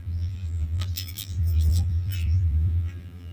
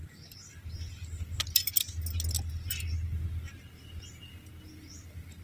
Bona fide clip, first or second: second